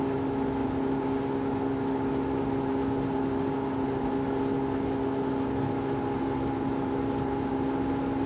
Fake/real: real